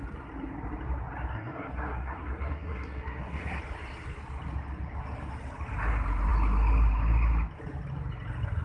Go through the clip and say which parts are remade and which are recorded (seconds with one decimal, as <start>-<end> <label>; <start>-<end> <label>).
0.0-1.3 recorded; 1.3-3.6 remade; 3.6-8.6 recorded